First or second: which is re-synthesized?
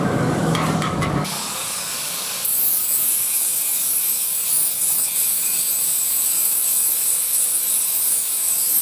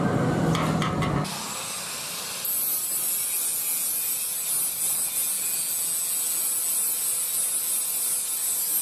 first